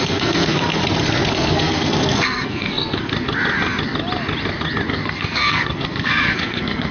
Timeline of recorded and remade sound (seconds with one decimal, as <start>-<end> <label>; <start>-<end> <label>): 0.0-0.8 remade; 0.8-1.3 recorded; 1.3-3.1 remade; 3.1-4.9 recorded; 4.9-6.9 remade